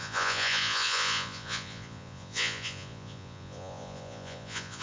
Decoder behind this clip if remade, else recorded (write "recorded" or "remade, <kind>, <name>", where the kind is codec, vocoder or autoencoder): remade, vocoder, Vocos